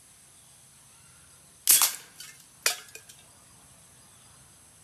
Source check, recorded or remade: recorded